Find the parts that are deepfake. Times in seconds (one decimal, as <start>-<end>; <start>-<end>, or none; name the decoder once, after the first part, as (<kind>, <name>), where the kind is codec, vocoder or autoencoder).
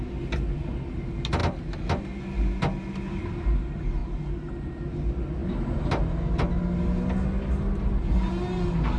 none